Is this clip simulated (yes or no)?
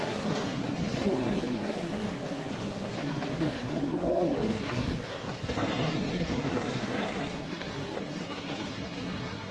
yes